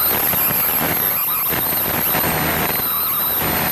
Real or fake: real